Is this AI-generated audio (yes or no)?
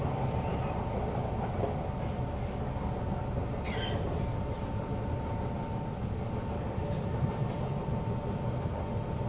no